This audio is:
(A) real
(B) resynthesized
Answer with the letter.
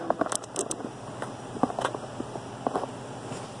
A